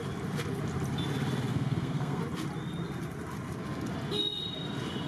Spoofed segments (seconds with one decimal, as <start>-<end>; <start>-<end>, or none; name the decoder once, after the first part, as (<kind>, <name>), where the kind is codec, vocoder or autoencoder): 1.5-2.2 (codec, SNAC)